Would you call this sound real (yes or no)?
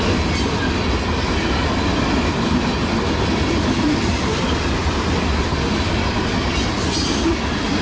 yes